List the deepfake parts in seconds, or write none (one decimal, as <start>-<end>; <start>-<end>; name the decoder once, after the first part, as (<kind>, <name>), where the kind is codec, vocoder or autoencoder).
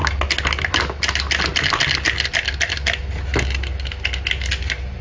none